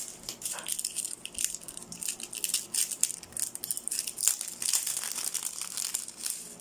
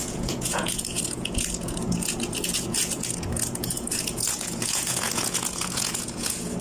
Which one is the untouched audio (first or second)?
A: first